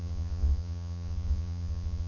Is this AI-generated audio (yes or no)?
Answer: yes